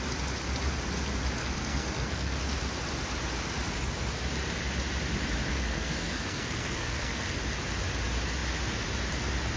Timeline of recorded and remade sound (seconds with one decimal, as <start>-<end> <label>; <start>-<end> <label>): 0.0-1.4 recorded; 1.4-2.4 remade; 2.4-5.5 recorded; 5.5-7.4 remade; 7.4-9.6 recorded